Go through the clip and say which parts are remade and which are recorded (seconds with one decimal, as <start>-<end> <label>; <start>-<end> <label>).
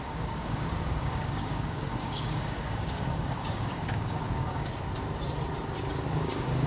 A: 0.0-4.7 remade; 4.7-6.1 recorded; 6.1-6.7 remade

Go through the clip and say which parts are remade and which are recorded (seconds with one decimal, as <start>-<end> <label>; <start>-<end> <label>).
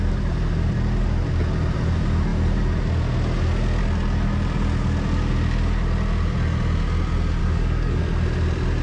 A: 0.0-7.4 recorded; 7.4-8.0 remade; 8.0-8.8 recorded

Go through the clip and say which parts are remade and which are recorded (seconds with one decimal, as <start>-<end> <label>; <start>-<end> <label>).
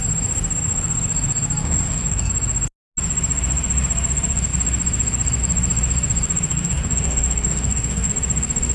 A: 0.0-1.6 recorded; 1.6-2.3 remade; 2.3-6.5 recorded; 6.5-8.1 remade; 8.1-8.7 recorded